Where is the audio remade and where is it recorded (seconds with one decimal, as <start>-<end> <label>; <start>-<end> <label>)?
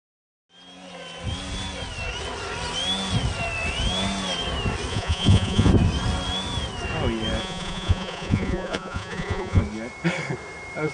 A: 0.0-4.9 recorded; 4.9-5.7 remade; 5.7-7.4 recorded; 7.4-9.6 remade; 9.6-10.9 recorded